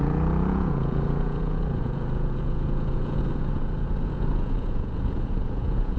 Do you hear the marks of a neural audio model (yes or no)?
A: yes